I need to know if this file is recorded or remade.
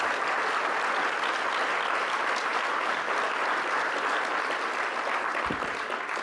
recorded